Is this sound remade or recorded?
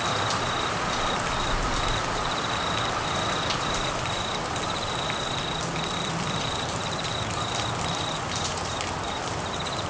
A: remade